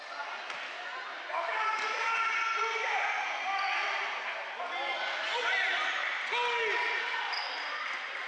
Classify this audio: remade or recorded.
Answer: recorded